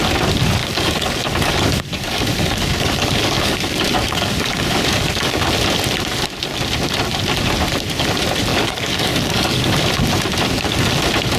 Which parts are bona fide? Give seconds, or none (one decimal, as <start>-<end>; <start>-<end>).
0.0-0.6; 5.4-8.5; 9.9-11.4